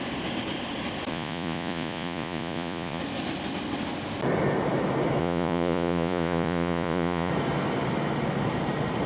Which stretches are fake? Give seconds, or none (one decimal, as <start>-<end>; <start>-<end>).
1.1-3.0; 5.2-7.3